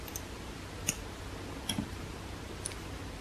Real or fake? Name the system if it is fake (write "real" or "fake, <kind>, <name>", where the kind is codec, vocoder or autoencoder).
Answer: real